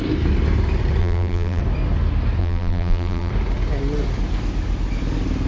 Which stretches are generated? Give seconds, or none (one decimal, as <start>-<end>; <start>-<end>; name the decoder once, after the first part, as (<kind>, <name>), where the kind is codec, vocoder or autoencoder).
1.0-1.6 (vocoder, BigVGAN v2); 2.4-3.3

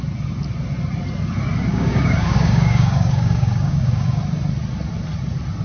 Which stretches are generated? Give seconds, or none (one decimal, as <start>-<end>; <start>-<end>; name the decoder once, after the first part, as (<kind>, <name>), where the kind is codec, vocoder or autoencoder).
1.7-4.2 (codec, DAC)

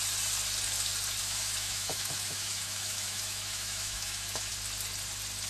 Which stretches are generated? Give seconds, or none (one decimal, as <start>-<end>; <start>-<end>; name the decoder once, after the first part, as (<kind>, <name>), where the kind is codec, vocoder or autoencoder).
1.2-4.5 (autoencoder, DAC-VAE)

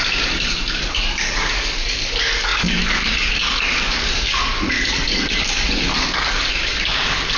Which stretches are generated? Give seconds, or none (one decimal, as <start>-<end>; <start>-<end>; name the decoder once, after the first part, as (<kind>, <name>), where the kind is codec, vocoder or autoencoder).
0.0-7.4 (codec, DAC)

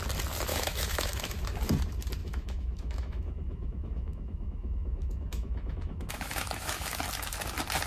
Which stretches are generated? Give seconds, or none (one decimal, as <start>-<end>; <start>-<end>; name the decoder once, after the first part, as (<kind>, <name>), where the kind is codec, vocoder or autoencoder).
0.5-1.4 (autoencoder, DAC-VAE); 2.2-6.9